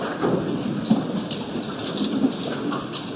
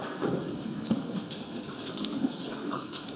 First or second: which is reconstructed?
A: second